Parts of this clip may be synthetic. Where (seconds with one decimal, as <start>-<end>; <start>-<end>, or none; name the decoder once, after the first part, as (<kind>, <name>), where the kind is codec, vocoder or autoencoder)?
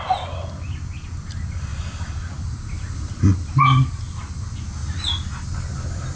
none